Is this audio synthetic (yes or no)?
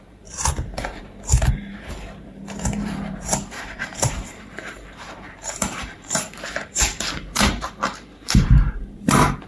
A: yes